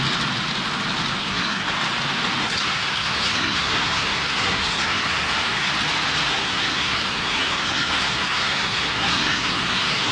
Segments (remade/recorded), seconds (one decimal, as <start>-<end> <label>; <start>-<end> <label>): 0.0-1.2 recorded; 1.2-1.7 remade; 1.7-2.4 recorded; 2.4-5.7 remade; 5.7-6.3 recorded; 6.3-10.1 remade